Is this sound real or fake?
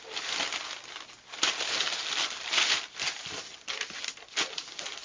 real